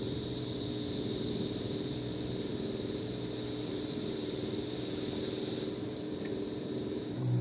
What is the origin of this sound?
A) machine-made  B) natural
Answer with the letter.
A